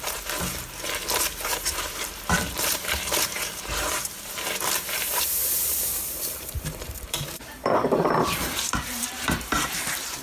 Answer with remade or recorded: remade